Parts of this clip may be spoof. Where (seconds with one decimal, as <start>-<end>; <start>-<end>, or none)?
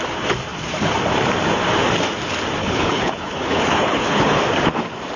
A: 2.6-4.4